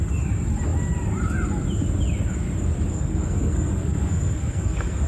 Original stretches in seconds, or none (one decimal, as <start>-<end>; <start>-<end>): 0.0-2.9